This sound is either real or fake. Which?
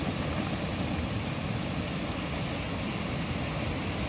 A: real